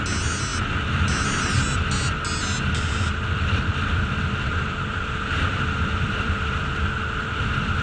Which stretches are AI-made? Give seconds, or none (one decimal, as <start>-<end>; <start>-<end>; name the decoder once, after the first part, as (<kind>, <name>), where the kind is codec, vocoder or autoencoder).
none